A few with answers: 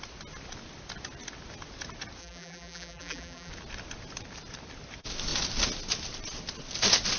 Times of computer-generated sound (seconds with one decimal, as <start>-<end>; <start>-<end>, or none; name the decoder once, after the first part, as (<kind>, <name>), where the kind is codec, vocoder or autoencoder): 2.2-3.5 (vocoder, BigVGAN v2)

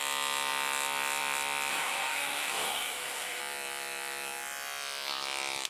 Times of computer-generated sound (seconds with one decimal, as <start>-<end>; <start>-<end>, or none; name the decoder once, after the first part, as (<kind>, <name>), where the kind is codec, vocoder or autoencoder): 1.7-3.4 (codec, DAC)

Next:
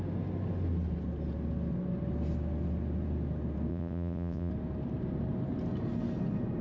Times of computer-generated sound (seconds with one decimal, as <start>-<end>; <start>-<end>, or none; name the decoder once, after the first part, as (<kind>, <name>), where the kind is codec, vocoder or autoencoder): 3.7-4.5 (vocoder, WaveNeXt)

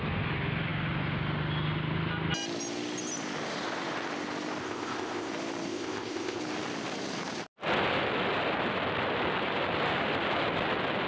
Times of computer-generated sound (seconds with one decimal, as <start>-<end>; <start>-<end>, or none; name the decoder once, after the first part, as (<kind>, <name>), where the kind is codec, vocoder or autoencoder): 4.6-5.3 (codec, ZipCodec); 5.7-6.4

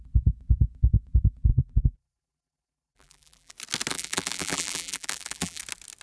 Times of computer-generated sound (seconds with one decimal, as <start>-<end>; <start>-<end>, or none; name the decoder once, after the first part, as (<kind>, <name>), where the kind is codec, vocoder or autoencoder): 1.5-3.5 (vocoder, BigVGAN v2); 3.9-5.6

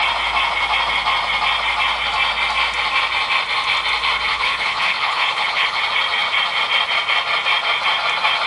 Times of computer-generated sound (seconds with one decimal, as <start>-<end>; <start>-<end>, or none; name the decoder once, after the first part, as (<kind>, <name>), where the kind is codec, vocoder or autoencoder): 4.3-5.8 (codec, HILCodec)

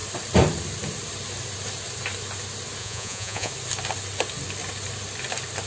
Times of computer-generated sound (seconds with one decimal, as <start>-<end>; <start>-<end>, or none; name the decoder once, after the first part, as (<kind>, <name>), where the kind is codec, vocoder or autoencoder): 2.8-3.5 (vocoder, Vocos)

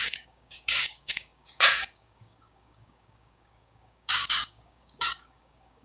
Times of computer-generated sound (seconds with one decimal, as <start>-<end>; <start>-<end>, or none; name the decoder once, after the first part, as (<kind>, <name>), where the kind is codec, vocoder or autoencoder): 0.0-5.8 (codec, DAC)